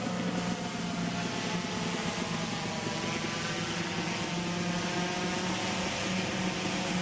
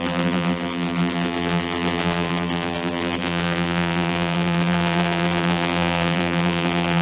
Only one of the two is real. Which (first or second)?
first